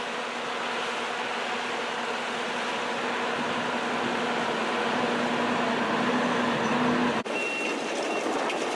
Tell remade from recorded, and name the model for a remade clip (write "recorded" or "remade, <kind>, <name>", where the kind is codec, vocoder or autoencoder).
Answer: recorded